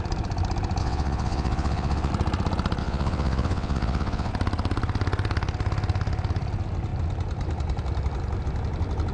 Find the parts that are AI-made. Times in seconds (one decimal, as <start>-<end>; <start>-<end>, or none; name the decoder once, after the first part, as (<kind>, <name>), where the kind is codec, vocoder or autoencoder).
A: 0.8-2.1 (vocoder, WaveNeXt); 2.8-4.3